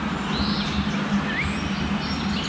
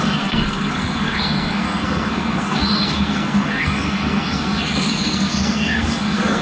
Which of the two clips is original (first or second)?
first